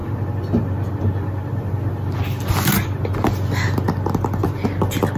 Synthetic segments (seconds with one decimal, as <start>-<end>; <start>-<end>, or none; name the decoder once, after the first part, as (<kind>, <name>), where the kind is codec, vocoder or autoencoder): none